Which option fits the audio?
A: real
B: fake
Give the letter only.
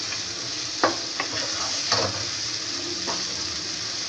A